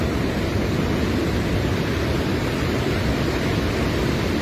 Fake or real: real